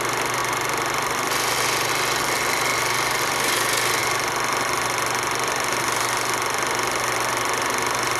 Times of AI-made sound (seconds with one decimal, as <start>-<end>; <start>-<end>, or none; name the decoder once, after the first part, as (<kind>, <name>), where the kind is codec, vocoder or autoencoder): none